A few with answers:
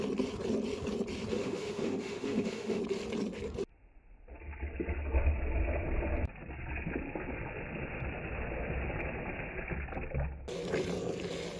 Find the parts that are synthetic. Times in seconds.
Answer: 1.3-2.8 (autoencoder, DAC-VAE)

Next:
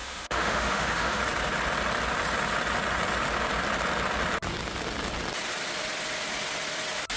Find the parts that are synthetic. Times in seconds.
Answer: 0.0-1.2 (autoencoder, DAC-VAE)

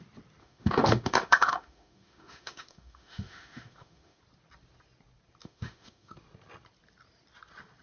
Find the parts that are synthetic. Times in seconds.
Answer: 0.4-4.2 (autoencoder, DAC-VAE); 5.4-6.1

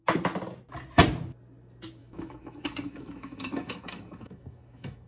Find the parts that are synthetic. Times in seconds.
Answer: 2.0-5.1 (autoencoder, DAC-VAE)